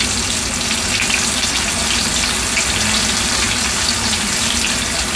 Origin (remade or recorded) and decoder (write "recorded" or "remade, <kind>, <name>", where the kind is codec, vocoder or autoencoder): recorded